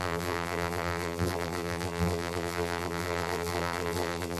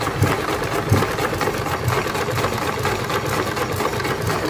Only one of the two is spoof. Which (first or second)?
first